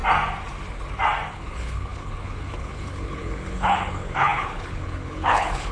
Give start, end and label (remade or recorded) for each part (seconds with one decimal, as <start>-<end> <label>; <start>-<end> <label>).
0.0-1.3 recorded; 1.3-5.7 remade